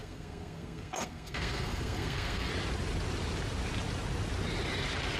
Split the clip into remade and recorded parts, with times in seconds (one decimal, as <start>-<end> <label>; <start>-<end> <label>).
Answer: 0.0-2.5 remade; 2.5-5.2 recorded